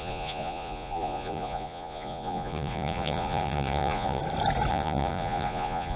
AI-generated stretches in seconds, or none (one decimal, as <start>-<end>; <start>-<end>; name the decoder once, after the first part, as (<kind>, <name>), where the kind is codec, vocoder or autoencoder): 0.0-4.2 (vocoder, Vocos); 4.7-6.0